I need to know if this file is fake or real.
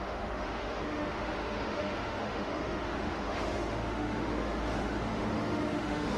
fake